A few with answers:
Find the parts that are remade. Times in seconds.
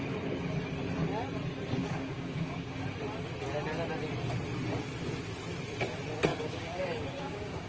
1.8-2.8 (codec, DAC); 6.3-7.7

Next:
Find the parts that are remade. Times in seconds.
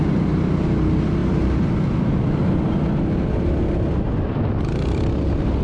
none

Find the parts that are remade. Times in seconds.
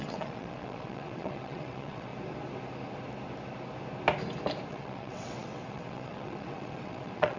0.0-2.1 (vocoder, WaveNeXt); 4.7-7.4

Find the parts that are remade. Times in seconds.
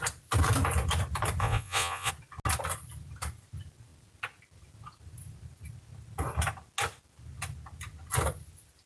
1.4-2.1 (vocoder, Vocos)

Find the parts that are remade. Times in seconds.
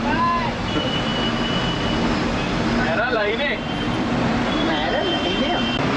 0.0-6.0 (vocoder, BigVGAN v2)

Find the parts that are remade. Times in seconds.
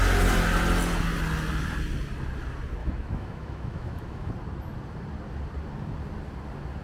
2.8-4.3 (autoencoder, DAC-VAE)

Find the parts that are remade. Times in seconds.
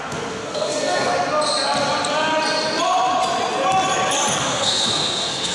0.0-1.1 (codec, SNAC); 4.4-5.5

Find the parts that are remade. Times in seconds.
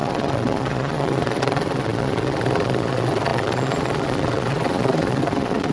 0.0-5.7 (vocoder, Vocos)